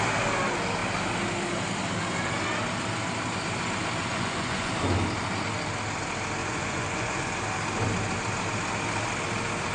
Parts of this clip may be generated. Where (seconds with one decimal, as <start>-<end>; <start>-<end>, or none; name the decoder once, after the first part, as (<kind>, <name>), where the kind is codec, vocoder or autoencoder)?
4.1-4.7 (vocoder, Vocos); 6.4-7.3